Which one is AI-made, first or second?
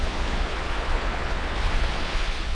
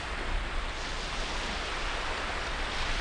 first